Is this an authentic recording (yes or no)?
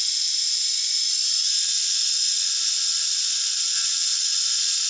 yes